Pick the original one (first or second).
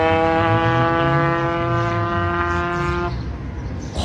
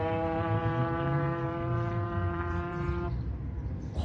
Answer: first